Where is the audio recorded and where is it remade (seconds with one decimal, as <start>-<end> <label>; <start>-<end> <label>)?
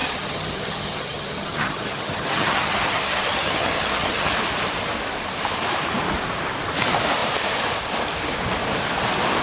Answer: 0.0-4.3 remade; 4.3-9.4 recorded